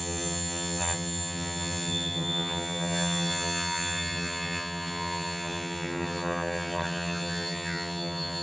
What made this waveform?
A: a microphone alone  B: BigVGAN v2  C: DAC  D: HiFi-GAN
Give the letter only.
D